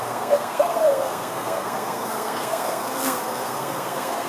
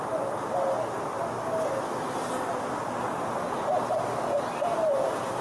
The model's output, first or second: first